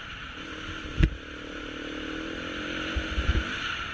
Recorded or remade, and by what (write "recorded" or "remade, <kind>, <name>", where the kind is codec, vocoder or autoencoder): recorded